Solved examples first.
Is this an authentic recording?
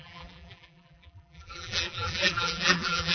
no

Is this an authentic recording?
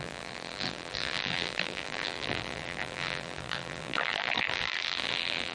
no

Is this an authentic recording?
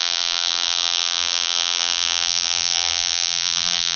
no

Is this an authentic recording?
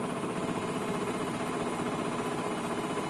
no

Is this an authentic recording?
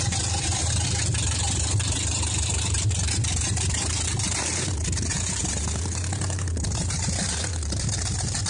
no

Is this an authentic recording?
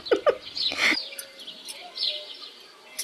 yes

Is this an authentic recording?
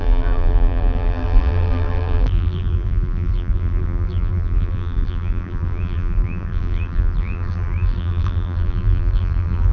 no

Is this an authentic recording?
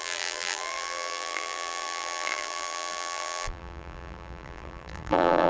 no